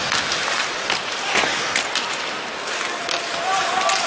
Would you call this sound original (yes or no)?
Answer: yes